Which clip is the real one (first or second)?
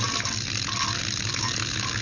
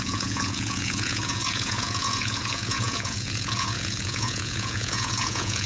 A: first